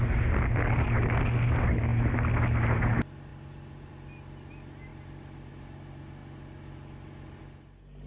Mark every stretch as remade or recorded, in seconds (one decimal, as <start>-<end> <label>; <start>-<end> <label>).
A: 0.0-8.1 recorded